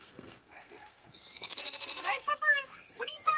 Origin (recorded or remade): remade